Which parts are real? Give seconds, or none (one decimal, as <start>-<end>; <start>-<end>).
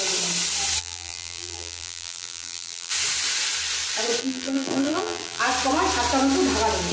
0.0-0.8; 2.9-4.2; 5.4-6.9